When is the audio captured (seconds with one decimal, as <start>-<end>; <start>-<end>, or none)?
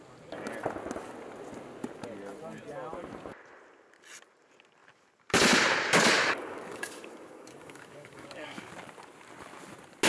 0.0-6.3; 8.7-10.1